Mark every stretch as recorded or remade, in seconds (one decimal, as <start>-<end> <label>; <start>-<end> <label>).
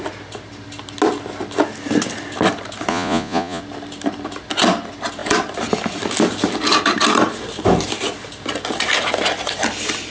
0.0-2.9 recorded; 2.9-3.6 remade; 3.6-10.1 recorded